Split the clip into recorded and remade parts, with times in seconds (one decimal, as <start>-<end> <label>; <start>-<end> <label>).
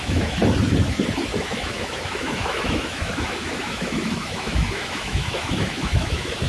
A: 0.0-0.4 remade; 0.4-1.3 recorded; 1.3-6.5 remade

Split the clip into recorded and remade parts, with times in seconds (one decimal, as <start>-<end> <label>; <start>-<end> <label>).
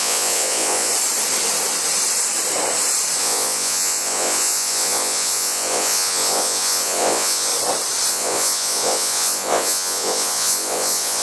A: 0.0-0.9 remade; 0.9-3.2 recorded; 3.2-7.5 remade; 7.5-8.1 recorded; 8.1-11.2 remade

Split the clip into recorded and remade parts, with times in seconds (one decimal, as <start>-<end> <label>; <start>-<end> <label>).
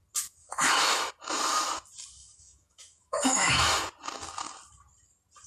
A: 0.0-0.4 recorded; 0.4-1.1 remade; 1.1-2.2 recorded; 2.2-3.8 remade; 3.8-5.5 recorded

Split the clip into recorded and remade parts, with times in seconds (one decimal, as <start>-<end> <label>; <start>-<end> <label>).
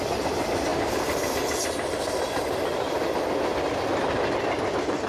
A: 0.0-0.7 recorded; 0.7-3.8 remade; 3.8-5.1 recorded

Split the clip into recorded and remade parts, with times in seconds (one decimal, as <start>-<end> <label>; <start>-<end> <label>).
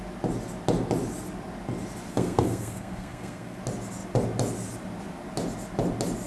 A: 0.0-2.1 recorded; 2.1-3.6 remade; 3.6-6.3 recorded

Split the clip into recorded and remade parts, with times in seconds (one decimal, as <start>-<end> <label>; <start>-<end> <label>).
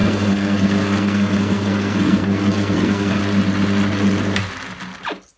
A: 0.0-3.2 remade; 3.2-5.4 recorded